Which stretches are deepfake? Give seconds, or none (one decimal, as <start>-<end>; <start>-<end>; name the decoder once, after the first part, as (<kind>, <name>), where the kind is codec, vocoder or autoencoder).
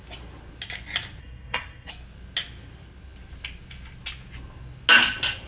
1.2-1.9 (codec, SNAC)